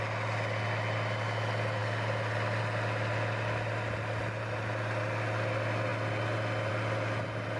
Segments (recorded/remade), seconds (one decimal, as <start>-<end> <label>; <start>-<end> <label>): 0.0-7.6 recorded